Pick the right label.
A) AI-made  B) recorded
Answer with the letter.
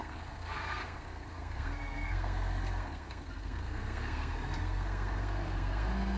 A